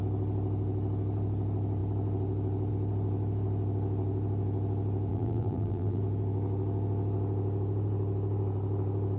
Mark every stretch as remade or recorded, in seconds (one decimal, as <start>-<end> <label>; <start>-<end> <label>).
0.0-5.1 recorded; 5.1-6.0 remade; 6.0-9.2 recorded